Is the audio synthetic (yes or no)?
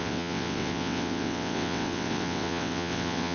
yes